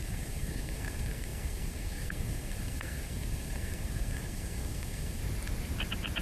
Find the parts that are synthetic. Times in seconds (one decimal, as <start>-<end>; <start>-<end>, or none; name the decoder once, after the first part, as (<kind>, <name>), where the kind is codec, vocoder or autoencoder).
0.0-5.2 (codec, SNAC)